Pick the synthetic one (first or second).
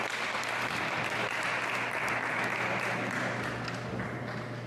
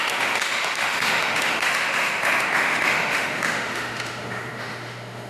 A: second